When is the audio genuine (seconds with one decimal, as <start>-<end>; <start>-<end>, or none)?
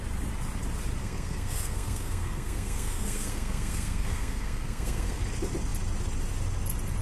0.0-1.0; 5.2-7.0